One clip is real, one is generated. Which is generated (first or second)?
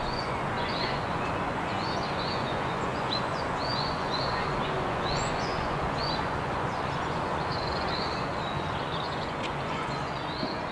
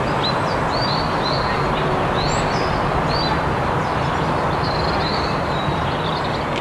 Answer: first